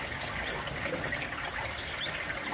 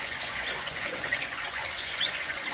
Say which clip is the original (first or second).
first